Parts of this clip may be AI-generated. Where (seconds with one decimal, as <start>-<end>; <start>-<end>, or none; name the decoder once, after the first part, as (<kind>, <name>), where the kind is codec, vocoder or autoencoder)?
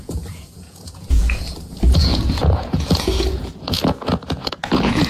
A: 0.0-5.1 (vocoder, Vocos)